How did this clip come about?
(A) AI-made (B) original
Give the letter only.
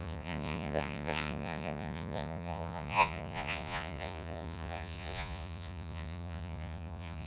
A